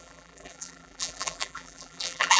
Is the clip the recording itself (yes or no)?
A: no